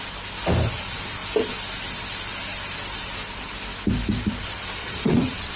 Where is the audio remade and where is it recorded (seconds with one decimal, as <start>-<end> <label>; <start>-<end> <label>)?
0.0-4.8 recorded; 4.8-5.6 remade